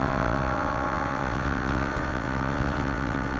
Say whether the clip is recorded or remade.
remade